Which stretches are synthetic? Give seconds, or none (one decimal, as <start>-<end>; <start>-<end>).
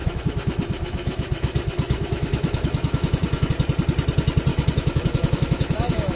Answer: 0.0-3.5; 4.5-6.2